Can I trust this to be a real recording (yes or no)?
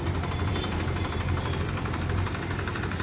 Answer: no